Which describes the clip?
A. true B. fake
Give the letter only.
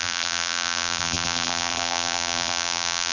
B